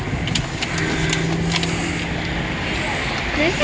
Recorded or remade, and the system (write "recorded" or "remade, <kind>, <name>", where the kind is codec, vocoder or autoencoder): recorded